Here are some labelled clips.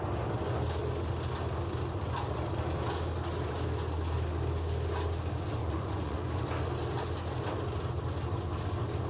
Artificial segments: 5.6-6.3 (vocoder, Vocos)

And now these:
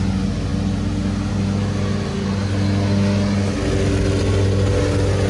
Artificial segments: none

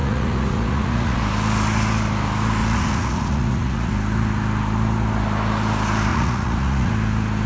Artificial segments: 0.0-1.2 (vocoder, Vocos); 2.6-3.9; 6.1-6.9

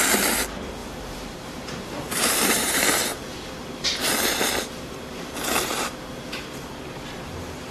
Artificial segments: 0.8-2.7 (vocoder, BigVGAN v2)

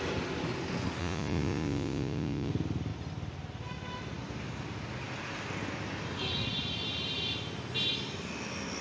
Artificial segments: 1.0-2.5 (vocoder, Vocos)